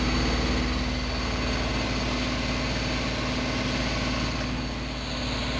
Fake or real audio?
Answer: real